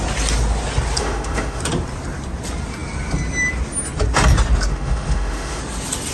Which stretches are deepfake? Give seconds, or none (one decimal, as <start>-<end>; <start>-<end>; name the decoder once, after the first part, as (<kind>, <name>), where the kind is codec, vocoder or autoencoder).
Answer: 1.0-1.6 (autoencoder, DAC-VAE); 4.7-5.6